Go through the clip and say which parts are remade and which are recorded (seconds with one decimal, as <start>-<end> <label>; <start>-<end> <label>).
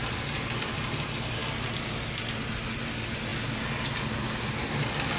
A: 0.0-5.2 recorded